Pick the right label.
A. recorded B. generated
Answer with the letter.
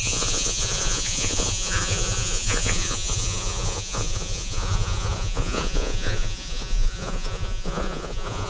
B